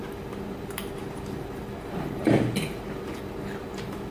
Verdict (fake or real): real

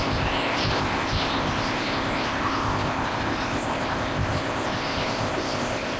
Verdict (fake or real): fake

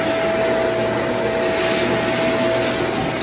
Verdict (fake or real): real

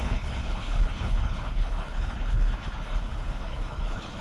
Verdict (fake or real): fake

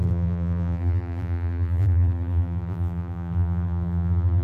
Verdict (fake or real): fake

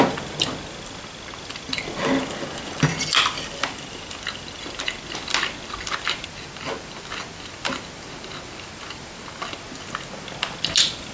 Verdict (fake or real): real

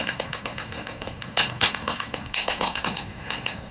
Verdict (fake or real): fake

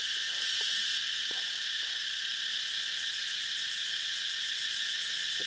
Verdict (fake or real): real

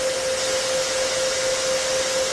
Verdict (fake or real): real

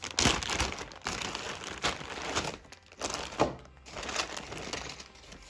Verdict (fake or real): real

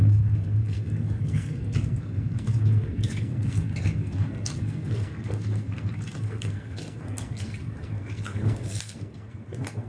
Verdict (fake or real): fake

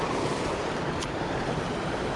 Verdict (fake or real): fake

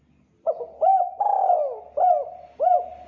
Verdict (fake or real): real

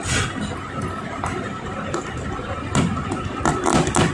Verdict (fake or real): real